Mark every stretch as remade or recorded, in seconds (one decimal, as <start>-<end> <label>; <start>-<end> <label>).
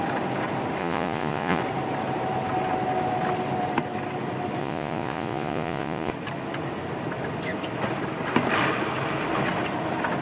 0.0-0.8 recorded; 0.8-1.6 remade; 1.6-4.6 recorded; 4.6-6.1 remade; 6.1-10.2 recorded